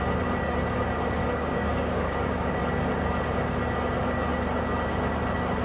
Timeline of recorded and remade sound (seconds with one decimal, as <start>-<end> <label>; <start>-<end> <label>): 0.0-1.2 recorded; 1.2-2.6 remade; 2.6-5.6 recorded